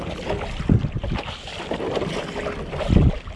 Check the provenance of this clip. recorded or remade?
recorded